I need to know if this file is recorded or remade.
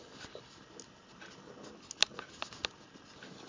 recorded